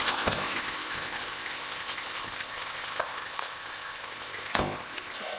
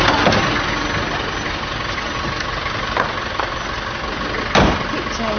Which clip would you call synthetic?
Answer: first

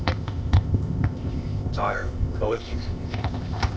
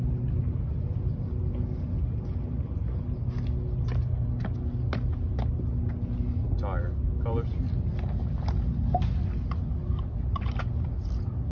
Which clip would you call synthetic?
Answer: first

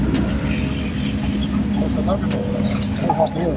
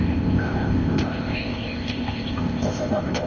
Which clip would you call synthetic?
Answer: second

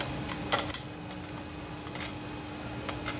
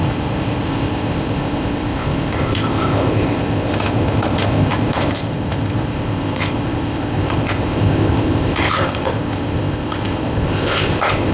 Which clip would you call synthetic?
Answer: second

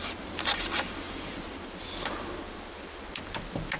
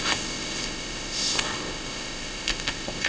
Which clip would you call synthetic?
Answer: second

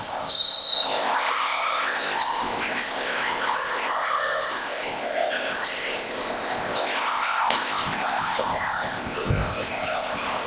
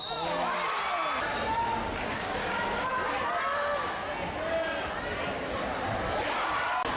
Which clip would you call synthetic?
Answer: first